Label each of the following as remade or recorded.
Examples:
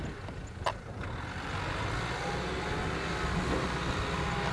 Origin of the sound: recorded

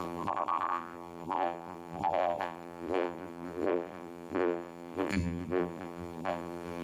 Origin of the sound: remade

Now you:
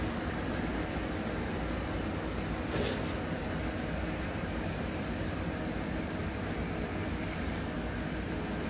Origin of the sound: recorded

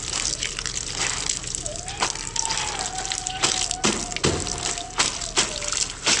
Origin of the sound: recorded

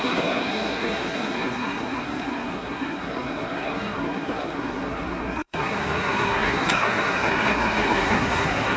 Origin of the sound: remade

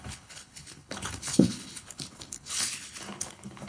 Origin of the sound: remade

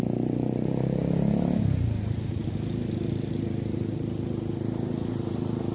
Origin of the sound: recorded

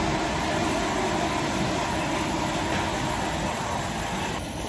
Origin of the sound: recorded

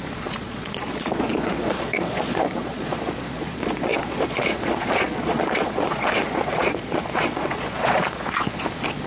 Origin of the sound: remade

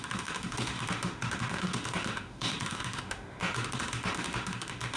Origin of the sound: remade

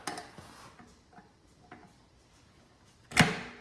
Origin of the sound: recorded